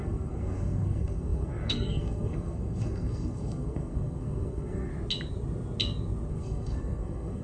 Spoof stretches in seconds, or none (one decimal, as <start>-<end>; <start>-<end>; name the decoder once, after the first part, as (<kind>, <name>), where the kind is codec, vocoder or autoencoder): 0.0-4.9 (codec, SNAC); 6.3-7.4